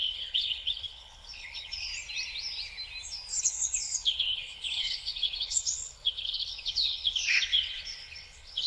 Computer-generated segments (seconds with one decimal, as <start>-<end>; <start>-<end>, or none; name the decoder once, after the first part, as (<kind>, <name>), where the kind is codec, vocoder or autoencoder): 0.0-1.9 (codec, HILCodec); 3.4-8.7